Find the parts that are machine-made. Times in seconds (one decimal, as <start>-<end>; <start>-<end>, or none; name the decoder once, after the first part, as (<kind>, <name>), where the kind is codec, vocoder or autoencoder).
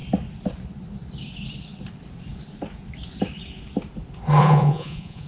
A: 4.4-5.3 (vocoder, Vocos)